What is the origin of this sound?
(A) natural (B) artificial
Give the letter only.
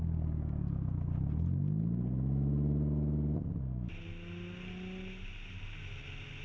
A